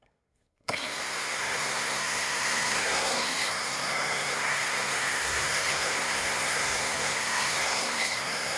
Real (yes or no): no